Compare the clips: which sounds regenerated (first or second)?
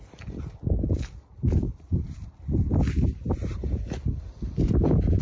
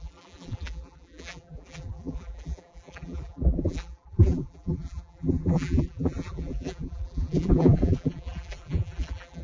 second